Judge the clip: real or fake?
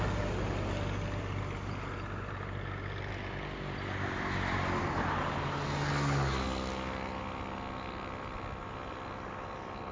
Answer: real